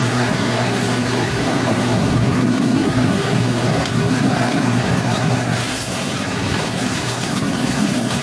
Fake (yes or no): yes